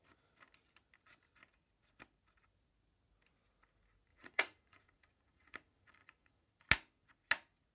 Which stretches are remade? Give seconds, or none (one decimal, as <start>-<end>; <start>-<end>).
4.1-6.5